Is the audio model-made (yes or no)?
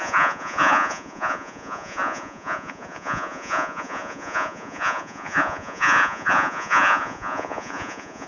yes